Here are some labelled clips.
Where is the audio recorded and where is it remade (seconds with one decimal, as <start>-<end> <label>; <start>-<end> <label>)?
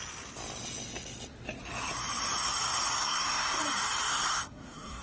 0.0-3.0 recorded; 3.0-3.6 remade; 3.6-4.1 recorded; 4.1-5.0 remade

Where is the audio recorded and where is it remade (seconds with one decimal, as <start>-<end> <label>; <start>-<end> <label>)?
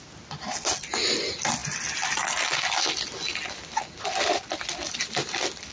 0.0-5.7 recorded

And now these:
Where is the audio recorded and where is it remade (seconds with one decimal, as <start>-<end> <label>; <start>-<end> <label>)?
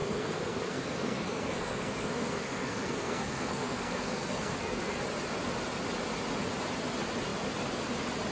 0.0-5.0 remade; 5.0-8.3 recorded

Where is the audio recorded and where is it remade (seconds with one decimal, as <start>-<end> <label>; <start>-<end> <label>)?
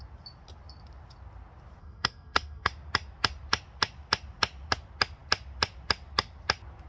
0.0-1.8 recorded; 1.8-2.7 remade; 2.7-6.9 recorded